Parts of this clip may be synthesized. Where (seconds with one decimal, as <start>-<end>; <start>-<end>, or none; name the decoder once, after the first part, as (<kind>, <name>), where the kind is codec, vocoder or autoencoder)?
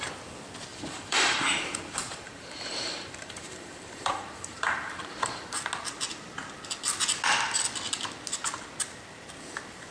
0.7-5.6 (vocoder, BigVGAN v2)